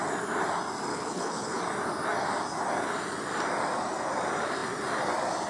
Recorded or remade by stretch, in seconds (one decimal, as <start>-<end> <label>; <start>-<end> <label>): 0.0-0.9 recorded; 0.9-1.6 remade; 1.6-5.5 recorded